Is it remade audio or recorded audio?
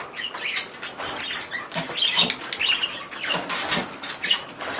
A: recorded